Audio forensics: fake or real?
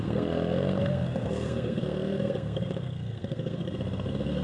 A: fake